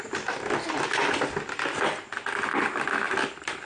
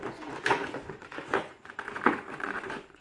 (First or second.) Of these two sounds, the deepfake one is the second